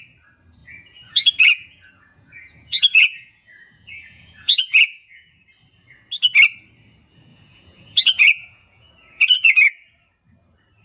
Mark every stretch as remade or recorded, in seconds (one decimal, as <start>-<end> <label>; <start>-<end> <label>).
0.0-0.6 recorded; 0.6-5.3 remade; 5.3-7.3 recorded; 7.3-9.7 remade; 9.7-10.8 recorded